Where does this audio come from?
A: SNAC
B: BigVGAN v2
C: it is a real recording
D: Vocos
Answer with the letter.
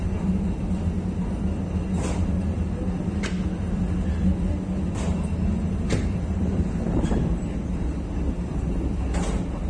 C